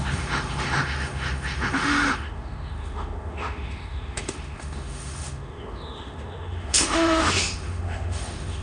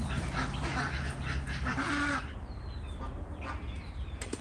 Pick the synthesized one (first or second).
first